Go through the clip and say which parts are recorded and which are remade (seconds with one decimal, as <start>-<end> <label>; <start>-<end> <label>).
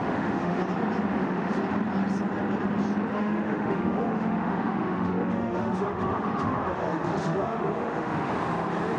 0.0-0.6 remade; 0.6-1.1 recorded; 1.1-1.6 remade; 1.6-3.1 recorded; 3.1-8.3 remade; 8.3-9.0 recorded